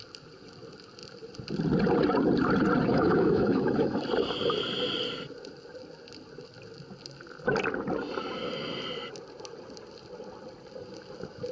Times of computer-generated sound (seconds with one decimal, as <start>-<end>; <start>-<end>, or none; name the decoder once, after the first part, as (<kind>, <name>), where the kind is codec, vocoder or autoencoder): 2.9-4.0 (autoencoder, DAC-VAE)